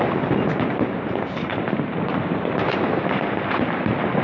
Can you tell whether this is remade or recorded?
remade